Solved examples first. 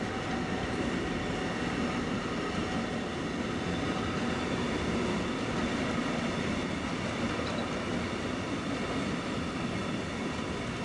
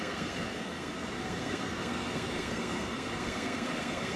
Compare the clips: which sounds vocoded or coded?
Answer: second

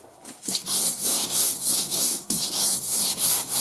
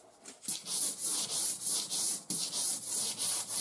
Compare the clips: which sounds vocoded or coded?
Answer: first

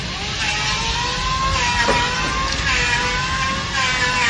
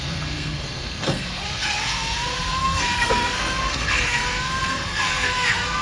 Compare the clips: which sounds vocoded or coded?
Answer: second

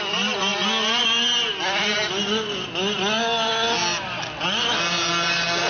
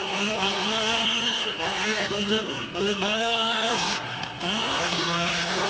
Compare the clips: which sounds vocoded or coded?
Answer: second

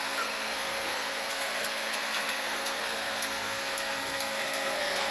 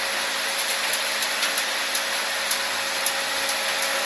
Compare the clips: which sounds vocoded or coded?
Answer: first